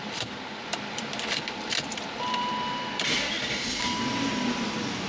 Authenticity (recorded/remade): remade